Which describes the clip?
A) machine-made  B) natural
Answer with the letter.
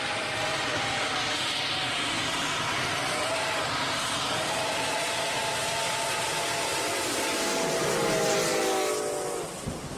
B